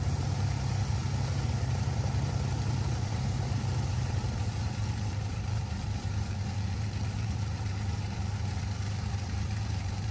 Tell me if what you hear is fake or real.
fake